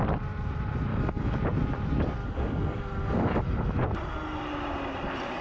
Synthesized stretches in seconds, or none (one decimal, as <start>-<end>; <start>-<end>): 0.9-1.4; 2.2-3.8